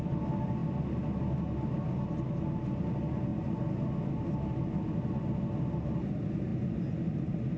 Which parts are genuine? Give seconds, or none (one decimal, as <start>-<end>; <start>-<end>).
0.0-7.6